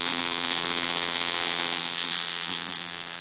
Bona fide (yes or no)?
no